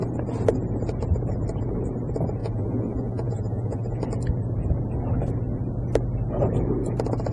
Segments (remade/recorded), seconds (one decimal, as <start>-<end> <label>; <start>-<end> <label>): 0.0-2.4 recorded; 2.4-4.0 remade; 4.0-7.3 recorded